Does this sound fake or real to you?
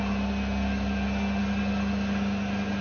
real